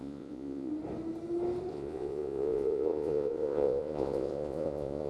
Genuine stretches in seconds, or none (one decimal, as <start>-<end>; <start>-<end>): 0.7-1.7

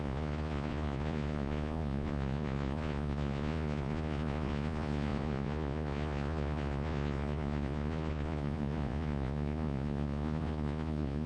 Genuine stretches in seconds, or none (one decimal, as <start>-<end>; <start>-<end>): none

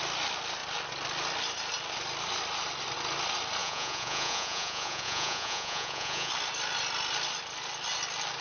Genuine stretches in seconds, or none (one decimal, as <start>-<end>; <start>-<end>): 0.0-3.6; 6.3-8.4

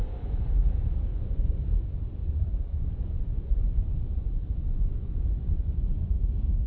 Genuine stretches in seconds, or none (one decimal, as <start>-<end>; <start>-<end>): 0.6-1.1; 1.6-2.2; 6.2-6.7